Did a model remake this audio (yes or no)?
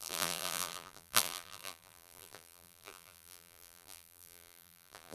yes